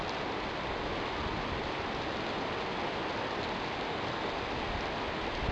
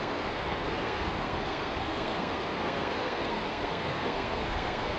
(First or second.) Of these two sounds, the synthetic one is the second